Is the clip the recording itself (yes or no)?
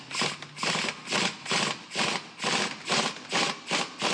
yes